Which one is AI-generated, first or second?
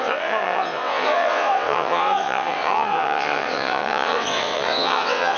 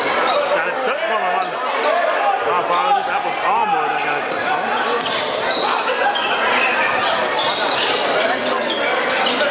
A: first